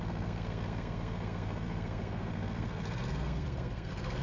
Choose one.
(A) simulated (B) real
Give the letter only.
A